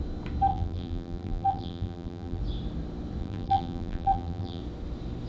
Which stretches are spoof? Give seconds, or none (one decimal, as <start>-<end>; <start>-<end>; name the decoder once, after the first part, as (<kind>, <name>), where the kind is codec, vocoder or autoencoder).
0.5-2.4 (vocoder, BigVGAN v2); 3.2-4.6